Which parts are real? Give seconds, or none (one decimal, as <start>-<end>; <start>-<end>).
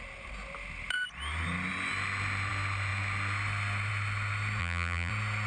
0.0-4.6; 5.1-5.5